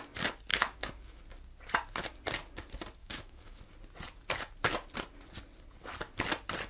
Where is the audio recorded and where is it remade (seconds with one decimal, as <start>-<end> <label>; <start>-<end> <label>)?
0.0-0.5 recorded; 0.5-1.2 remade; 1.2-3.0 recorded; 3.0-3.6 remade; 3.6-6.7 recorded